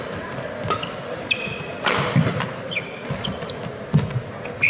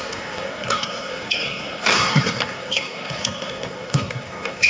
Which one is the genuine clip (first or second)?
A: first